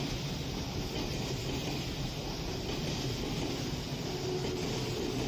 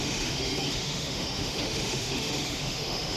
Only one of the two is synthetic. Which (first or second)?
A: second